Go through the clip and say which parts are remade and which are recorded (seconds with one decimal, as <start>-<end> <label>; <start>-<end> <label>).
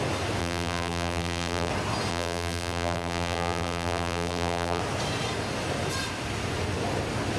0.0-0.4 recorded; 0.4-1.7 remade; 1.7-2.1 recorded; 2.1-4.8 remade; 4.8-7.4 recorded